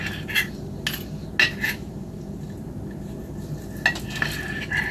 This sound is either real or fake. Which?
real